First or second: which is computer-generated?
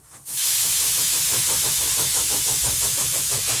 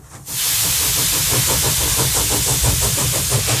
first